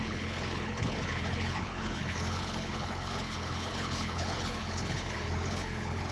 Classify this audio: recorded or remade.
remade